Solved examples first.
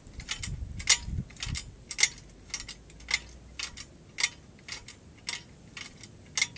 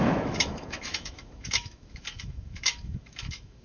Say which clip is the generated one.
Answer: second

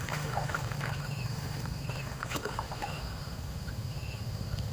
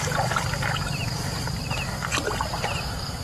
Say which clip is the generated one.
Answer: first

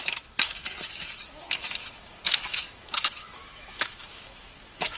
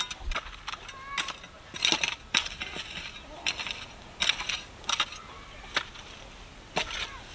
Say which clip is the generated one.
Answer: first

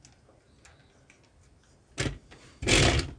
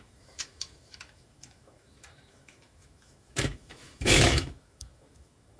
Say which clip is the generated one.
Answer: second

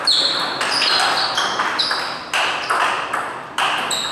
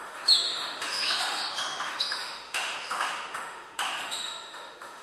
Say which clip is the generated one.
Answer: second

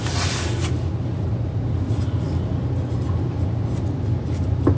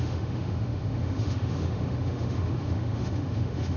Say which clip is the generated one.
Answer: second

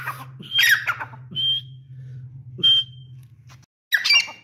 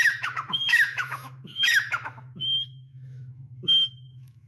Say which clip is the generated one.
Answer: second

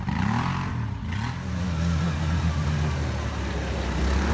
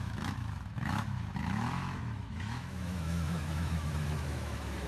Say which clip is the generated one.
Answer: second